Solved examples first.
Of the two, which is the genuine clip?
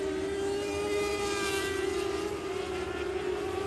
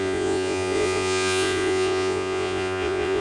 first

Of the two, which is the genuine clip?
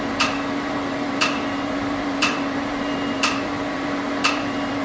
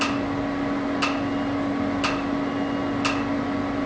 second